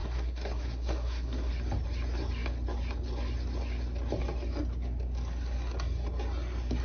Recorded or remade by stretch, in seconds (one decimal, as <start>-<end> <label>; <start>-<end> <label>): 0.0-1.5 remade; 1.5-6.8 recorded